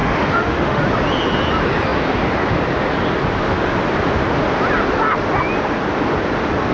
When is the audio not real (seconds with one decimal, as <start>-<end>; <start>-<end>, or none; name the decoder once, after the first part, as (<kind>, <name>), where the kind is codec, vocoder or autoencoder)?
0.0-0.8 (autoencoder, DAC-VAE)

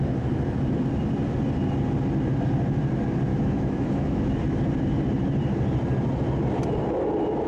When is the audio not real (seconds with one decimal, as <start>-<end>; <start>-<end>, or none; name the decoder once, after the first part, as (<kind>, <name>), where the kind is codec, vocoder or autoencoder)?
3.3-4.3 (autoencoder, DAC-VAE)

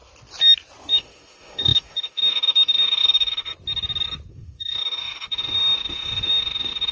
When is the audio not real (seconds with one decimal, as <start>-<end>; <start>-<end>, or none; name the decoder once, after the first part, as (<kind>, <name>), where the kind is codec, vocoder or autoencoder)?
0.9-3.5 (autoencoder, DAC-VAE); 4.3-6.9

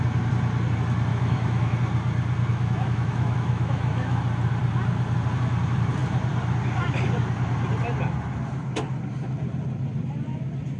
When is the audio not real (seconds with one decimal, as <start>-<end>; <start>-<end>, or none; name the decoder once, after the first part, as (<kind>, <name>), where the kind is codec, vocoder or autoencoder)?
1.1-1.8 (autoencoder, DAC-VAE); 2.5-4.2

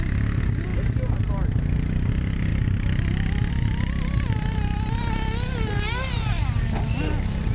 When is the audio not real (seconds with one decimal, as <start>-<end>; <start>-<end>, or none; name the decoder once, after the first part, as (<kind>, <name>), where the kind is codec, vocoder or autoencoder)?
none

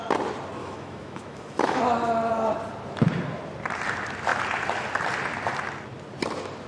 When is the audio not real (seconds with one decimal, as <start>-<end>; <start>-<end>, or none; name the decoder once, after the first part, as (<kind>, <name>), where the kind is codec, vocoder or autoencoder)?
0.6-1.8 (autoencoder, DAC-VAE)

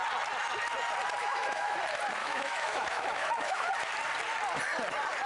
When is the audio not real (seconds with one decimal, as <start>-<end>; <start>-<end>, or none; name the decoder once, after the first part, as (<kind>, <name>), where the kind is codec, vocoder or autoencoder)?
1.2-1.8 (autoencoder, DAC-VAE); 2.2-3.7